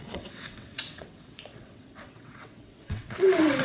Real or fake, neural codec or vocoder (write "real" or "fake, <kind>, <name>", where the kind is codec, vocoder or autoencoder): fake, vocoder, WaveNeXt